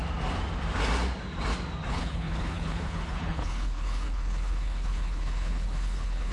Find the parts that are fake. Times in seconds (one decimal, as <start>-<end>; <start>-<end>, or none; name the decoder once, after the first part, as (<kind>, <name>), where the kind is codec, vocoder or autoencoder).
1.9-6.3 (codec, HILCodec)